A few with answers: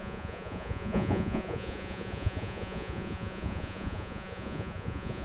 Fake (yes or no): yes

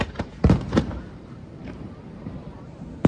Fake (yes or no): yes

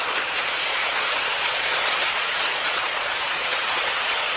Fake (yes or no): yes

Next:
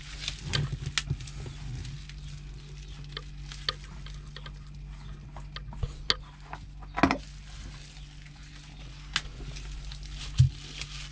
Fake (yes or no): no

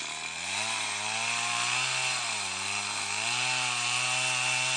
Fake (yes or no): no